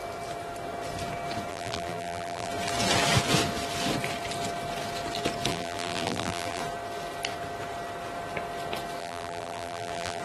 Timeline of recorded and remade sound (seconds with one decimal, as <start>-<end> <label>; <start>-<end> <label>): 0.0-1.5 recorded; 1.5-2.5 remade; 2.5-5.5 recorded; 5.5-6.6 remade; 6.6-9.0 recorded; 9.0-10.2 remade

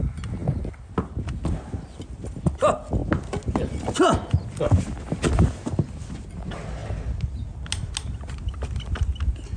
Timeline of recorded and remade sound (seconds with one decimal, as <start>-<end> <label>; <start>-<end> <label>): 0.0-9.6 recorded

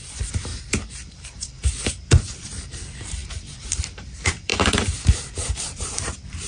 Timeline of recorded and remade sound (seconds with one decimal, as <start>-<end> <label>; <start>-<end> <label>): 0.0-0.5 remade; 0.5-1.9 recorded; 1.9-6.5 remade

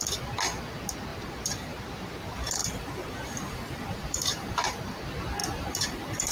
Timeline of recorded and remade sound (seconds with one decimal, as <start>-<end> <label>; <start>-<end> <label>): 0.0-1.1 recorded; 1.1-1.9 remade; 1.9-2.6 recorded; 2.6-4.8 remade; 4.8-5.4 recorded; 5.4-6.3 remade

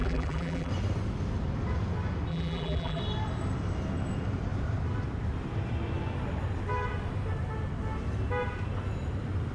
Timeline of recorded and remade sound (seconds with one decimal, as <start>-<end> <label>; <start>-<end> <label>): 0.0-0.7 remade; 0.7-2.3 recorded; 2.3-3.0 remade; 3.0-9.5 recorded

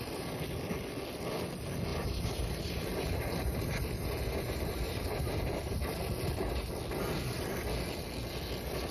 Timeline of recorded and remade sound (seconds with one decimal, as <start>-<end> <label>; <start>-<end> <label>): 0.0-1.9 recorded; 1.9-6.7 remade; 6.7-8.9 recorded

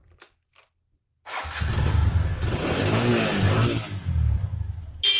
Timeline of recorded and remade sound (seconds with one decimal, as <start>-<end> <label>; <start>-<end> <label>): 0.0-2.2 remade; 2.2-5.2 recorded

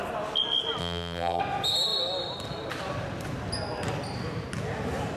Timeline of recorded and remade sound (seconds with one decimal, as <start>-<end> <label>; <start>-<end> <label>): 0.0-0.8 recorded; 0.8-1.4 remade; 1.4-5.2 recorded